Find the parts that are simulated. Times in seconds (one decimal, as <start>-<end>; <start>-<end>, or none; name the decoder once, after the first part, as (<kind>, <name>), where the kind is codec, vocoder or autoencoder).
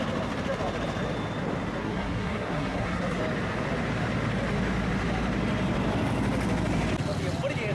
1.8-3.2 (codec, SNAC)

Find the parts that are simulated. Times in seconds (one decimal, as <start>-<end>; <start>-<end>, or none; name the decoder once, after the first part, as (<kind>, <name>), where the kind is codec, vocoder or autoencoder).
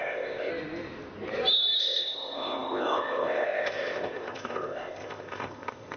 0.0-0.5 (codec, ZipCodec); 1.8-6.0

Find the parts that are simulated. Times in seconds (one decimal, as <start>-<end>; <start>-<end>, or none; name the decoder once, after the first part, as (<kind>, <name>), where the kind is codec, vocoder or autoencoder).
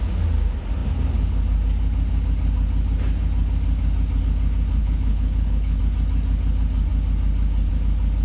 4.8-5.8 (codec, HILCodec)